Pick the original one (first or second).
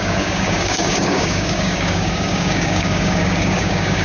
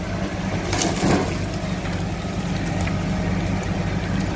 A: second